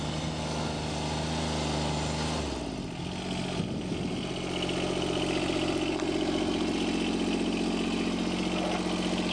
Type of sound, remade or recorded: recorded